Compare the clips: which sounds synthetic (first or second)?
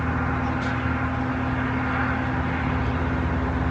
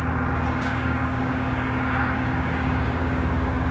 second